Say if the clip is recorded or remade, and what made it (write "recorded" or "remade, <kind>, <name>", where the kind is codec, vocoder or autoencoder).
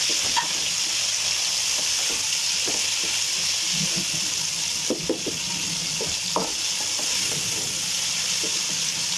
recorded